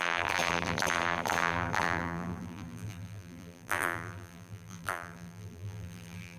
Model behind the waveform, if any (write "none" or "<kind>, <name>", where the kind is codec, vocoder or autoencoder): vocoder, BigVGAN v2